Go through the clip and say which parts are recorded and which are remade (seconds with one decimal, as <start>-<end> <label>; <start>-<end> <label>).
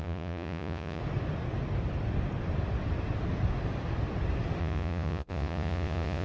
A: 0.0-1.0 remade; 1.0-4.6 recorded; 4.6-6.2 remade